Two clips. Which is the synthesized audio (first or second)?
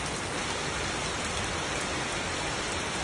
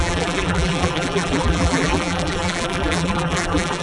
second